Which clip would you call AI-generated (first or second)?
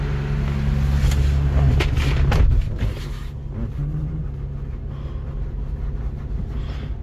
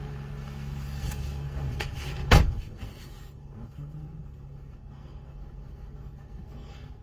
second